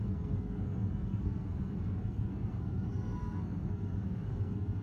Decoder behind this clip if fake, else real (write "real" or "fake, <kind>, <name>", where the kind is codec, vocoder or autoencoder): fake, codec, SNAC